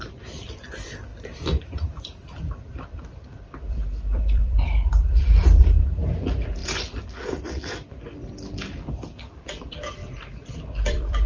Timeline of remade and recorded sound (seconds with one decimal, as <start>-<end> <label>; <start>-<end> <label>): 0.0-1.1 remade; 1.1-1.6 recorded; 1.6-6.6 remade; 6.6-8.9 recorded; 8.9-11.3 remade